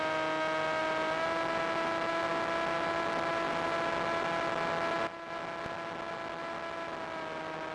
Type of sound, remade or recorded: recorded